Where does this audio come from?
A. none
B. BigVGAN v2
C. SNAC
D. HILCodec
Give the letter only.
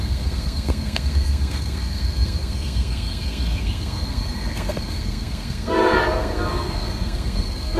C